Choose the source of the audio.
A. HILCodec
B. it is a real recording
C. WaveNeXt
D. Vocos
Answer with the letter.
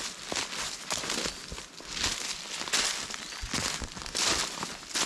B